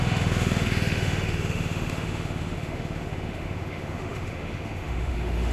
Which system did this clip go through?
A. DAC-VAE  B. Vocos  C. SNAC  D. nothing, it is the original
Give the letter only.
A